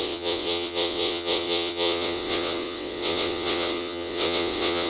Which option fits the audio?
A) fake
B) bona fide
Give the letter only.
A